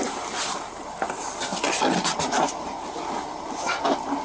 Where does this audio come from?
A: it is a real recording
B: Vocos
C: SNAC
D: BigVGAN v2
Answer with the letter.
A